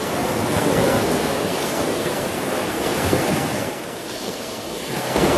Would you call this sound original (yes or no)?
no